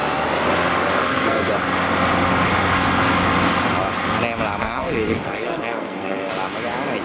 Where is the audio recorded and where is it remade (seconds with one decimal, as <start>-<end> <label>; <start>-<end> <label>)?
0.0-1.0 recorded; 1.0-1.5 remade; 1.5-4.6 recorded; 4.6-6.3 remade; 6.3-7.0 recorded